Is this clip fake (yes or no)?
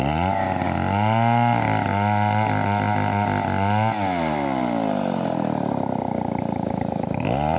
no